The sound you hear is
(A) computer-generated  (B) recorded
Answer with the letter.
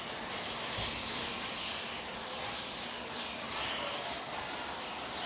B